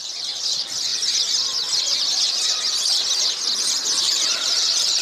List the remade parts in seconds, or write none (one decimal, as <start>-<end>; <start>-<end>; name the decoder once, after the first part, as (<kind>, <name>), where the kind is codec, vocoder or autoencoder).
0.0-0.9 (vocoder, BigVGAN v2); 3.9-5.0